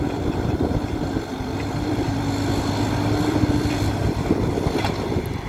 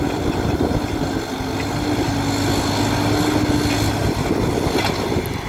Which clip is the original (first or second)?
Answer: second